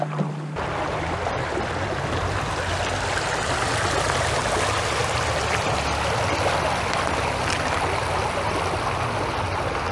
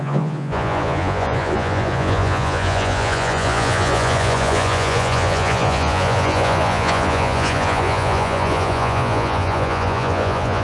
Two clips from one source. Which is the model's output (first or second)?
second